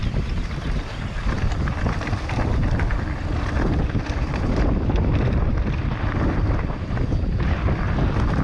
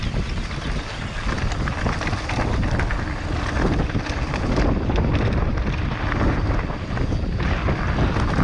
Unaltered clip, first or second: second